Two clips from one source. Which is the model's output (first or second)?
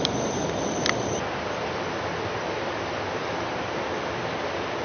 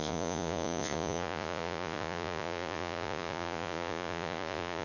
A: second